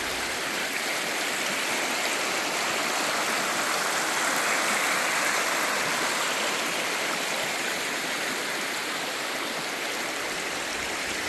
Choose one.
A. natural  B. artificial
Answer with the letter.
A